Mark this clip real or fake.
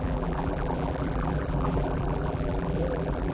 fake